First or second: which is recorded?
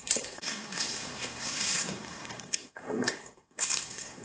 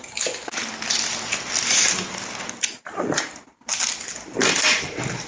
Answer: second